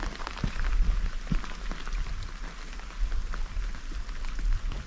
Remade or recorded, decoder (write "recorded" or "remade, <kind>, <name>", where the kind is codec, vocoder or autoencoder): recorded